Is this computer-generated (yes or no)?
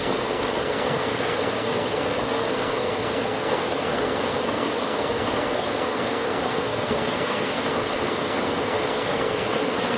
yes